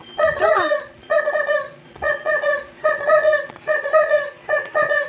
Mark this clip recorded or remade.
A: remade